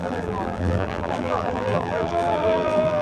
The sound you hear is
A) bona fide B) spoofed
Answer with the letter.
B